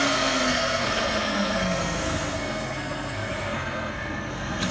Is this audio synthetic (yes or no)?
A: yes